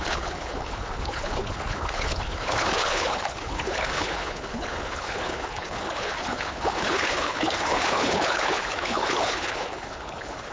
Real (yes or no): no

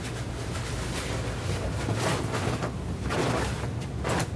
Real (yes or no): yes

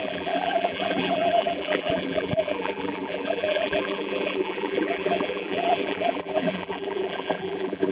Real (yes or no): no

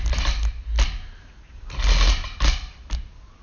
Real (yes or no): yes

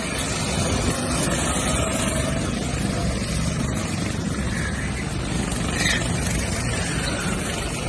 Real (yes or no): yes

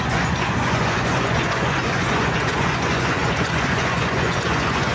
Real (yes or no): no